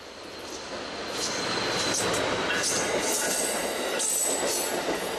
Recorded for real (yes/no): yes